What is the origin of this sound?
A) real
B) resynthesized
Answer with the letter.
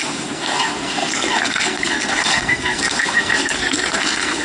B